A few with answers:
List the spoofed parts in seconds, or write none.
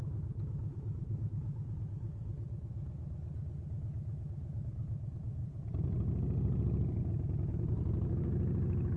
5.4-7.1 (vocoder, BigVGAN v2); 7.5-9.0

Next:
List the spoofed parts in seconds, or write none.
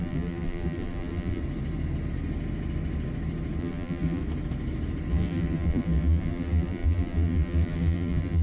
0.0-1.4 (vocoder, BigVGAN v2); 3.6-4.2; 5.1-8.4